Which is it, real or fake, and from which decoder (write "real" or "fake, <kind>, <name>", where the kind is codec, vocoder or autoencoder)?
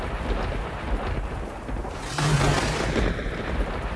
real